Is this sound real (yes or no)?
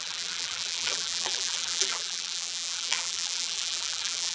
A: no